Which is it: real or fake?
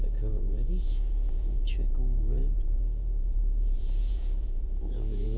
fake